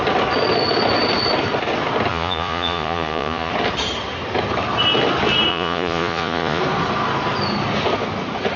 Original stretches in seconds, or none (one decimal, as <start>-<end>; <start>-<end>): 0.0-2.1; 3.5-5.5; 6.6-8.6